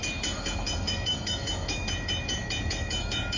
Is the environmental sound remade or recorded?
remade